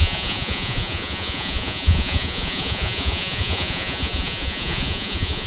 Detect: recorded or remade remade